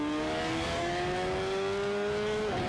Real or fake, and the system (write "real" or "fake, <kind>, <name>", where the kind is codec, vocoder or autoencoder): fake, codec, DAC